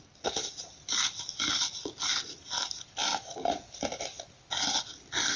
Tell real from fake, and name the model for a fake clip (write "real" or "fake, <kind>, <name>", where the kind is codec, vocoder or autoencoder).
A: real